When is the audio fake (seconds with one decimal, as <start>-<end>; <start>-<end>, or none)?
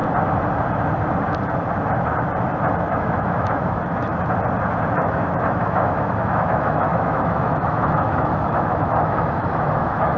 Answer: 2.8-4.1; 4.9-10.2